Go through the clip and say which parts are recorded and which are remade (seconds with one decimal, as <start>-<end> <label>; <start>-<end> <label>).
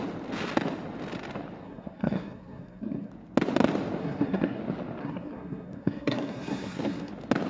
0.0-1.6 recorded; 1.6-3.1 remade; 3.1-4.0 recorded; 4.0-4.6 remade; 4.6-5.0 recorded; 5.0-7.1 remade; 7.1-7.5 recorded